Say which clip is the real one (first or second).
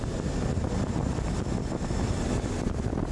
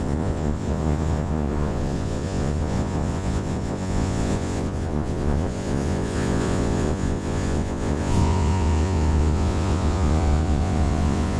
first